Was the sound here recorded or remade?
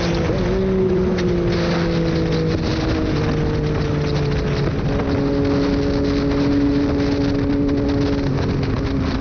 recorded